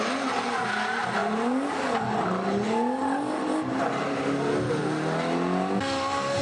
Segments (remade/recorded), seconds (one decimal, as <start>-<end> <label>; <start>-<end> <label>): 0.0-6.4 recorded